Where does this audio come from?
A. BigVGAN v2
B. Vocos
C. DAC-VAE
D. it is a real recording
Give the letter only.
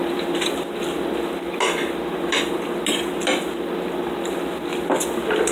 D